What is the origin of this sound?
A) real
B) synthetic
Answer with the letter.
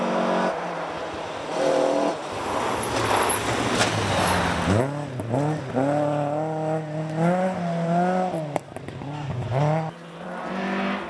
A